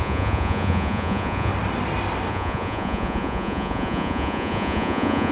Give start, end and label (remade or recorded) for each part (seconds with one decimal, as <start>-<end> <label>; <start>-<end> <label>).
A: 0.0-1.5 remade; 1.5-2.3 recorded; 2.3-5.3 remade